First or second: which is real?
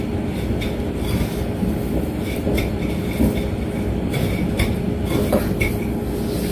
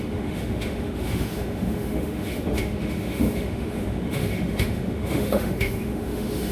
first